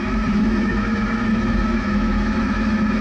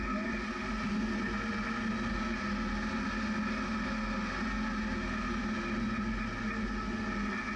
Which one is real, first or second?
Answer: second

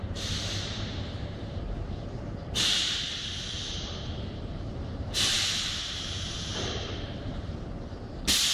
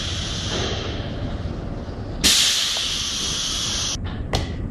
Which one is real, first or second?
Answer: second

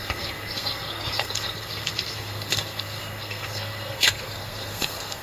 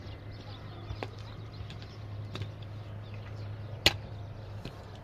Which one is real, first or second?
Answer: second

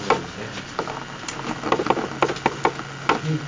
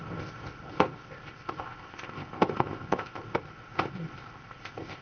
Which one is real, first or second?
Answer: first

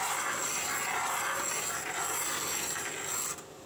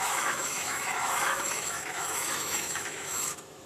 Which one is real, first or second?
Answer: first